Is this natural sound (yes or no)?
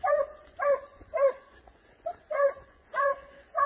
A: no